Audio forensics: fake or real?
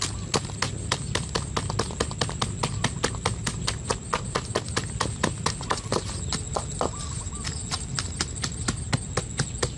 real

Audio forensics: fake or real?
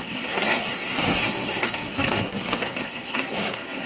fake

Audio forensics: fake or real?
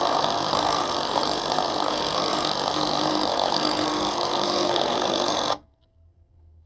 fake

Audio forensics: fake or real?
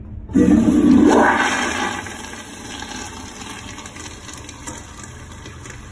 real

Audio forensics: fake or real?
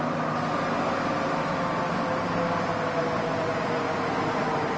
real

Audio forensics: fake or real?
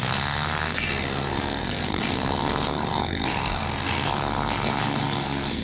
fake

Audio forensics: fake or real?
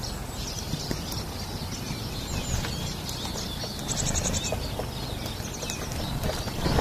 real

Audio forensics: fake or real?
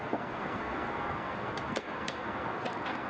fake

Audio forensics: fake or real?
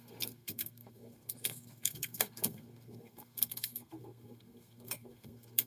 fake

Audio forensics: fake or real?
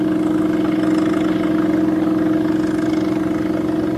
real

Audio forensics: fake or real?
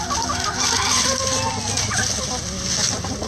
real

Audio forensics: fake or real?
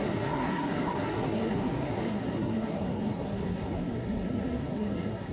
fake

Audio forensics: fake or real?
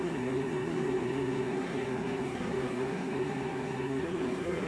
fake